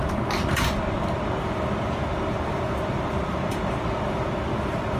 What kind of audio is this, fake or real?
fake